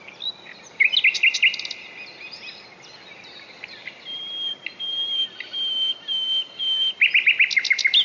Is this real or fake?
real